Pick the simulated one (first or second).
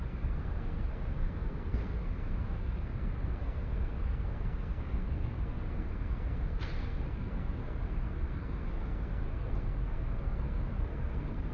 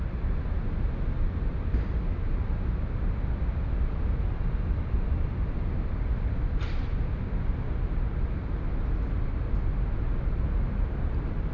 first